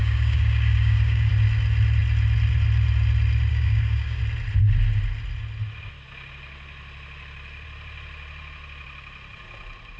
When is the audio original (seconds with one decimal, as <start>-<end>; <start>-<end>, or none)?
1.3-3.5; 4.2-10.0